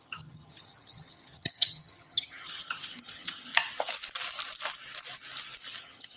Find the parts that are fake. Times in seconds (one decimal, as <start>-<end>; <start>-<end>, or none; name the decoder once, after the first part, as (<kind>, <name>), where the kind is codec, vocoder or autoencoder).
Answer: 0.0-3.5 (vocoder, HiFi-GAN); 5.8-6.2